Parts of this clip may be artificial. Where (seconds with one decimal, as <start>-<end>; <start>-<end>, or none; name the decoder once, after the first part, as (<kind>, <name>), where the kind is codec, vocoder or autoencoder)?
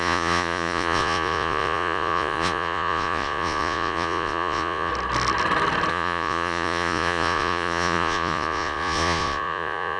0.0-4.9 (vocoder, Vocos); 5.9-10.0